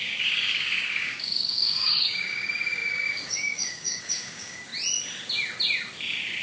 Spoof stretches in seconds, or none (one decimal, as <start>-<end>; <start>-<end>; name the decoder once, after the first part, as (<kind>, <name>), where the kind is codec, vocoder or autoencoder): 0.0-4.7 (codec, DAC)